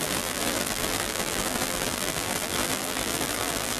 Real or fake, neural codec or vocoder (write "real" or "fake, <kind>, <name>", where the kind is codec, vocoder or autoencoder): fake, vocoder, BigVGAN v2